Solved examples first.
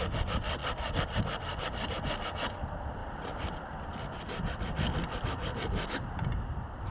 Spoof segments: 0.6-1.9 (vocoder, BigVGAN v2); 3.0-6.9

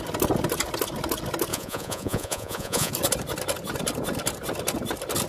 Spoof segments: 1.5-2.9 (vocoder, Vocos)

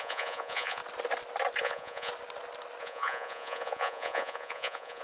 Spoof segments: 0.0-0.8 (vocoder, Vocos); 1.6-2.1; 2.8-5.0

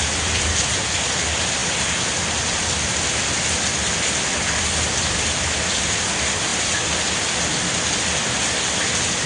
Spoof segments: none

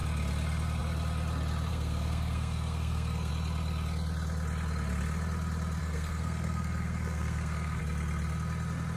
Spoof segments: 1.7-3.3 (codec, SNAC); 5.8-7.8